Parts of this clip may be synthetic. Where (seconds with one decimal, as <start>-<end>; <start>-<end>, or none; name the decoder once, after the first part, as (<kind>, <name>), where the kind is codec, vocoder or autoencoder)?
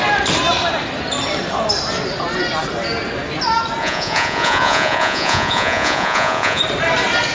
3.8-6.6 (vocoder, Vocos)